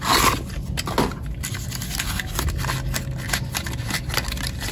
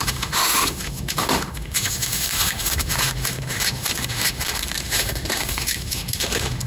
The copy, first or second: second